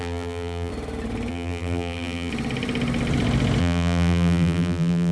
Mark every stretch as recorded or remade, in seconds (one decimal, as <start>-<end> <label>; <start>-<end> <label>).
0.0-0.7 remade; 0.7-1.3 recorded; 1.3-2.3 remade; 2.3-3.6 recorded; 3.6-5.1 remade

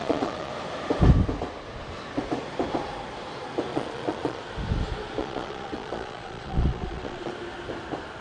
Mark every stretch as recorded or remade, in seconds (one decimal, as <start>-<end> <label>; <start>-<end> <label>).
0.0-0.5 remade; 0.5-3.7 recorded; 3.7-4.4 remade; 4.4-5.2 recorded; 5.2-7.3 remade; 7.3-8.2 recorded

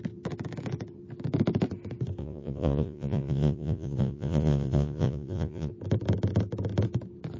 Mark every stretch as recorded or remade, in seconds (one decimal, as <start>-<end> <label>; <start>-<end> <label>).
0.0-2.2 recorded; 2.2-5.7 remade; 5.7-7.4 recorded

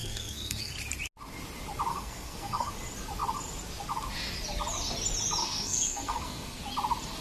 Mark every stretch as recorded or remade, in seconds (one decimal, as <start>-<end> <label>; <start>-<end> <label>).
0.0-0.7 remade; 0.7-1.9 recorded; 1.9-2.7 remade; 2.7-5.4 recorded; 5.4-6.6 remade; 6.6-7.2 recorded